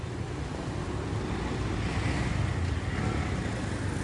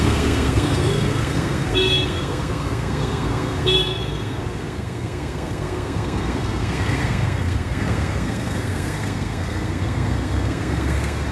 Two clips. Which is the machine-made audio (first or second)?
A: second